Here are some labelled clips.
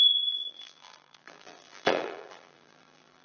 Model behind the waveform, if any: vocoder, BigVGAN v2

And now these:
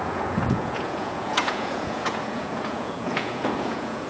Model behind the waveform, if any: vocoder, Vocos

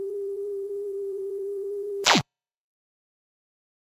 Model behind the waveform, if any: vocoder, BigVGAN v2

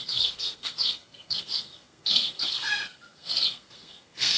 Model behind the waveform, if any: codec, SNAC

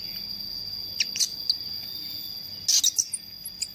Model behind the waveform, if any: none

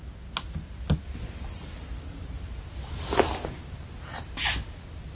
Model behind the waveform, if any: none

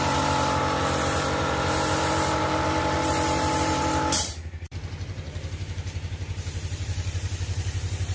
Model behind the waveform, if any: vocoder, BigVGAN v2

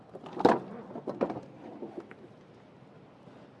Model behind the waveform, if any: none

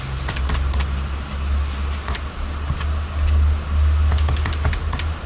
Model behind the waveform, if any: none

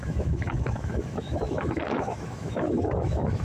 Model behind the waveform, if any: autoencoder, DAC-VAE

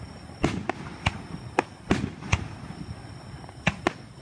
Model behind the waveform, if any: none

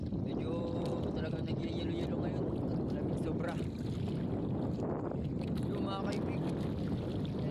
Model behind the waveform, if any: none